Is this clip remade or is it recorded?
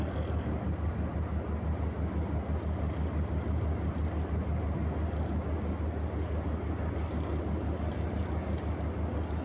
recorded